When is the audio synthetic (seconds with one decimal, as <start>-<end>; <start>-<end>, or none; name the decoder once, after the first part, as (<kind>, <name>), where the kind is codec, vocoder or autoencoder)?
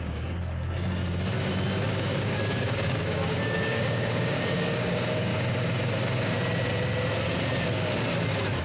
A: 0.0-1.0 (codec, DAC); 1.9-5.3